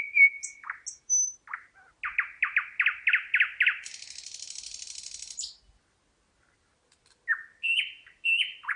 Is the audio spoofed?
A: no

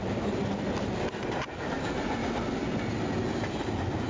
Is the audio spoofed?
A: no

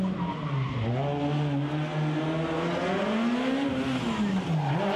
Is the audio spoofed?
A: no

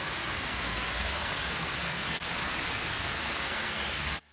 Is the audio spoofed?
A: yes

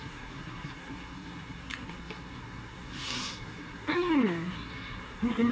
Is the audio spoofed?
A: yes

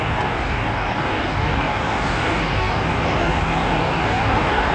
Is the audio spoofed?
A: yes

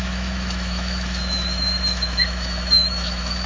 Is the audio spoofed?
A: yes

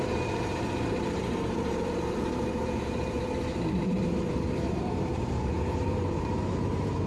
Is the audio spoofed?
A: yes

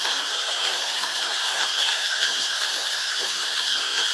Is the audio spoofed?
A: yes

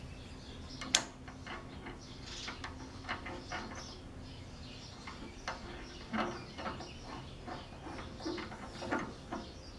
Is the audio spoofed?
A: no